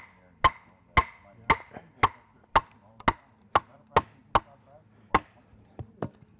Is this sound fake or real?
real